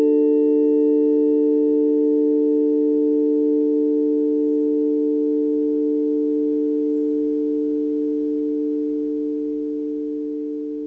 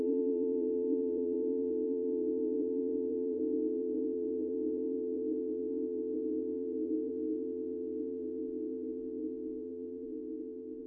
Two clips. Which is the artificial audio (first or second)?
second